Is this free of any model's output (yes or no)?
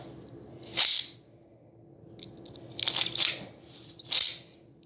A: yes